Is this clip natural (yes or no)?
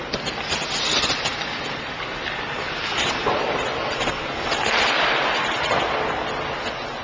yes